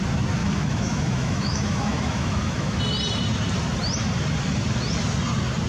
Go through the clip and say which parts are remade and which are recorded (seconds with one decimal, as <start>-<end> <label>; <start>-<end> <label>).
0.0-0.4 recorded; 0.4-2.8 remade; 2.8-5.7 recorded